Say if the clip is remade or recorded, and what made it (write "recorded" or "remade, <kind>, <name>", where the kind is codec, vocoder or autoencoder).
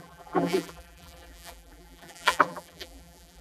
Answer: remade, vocoder, BigVGAN v2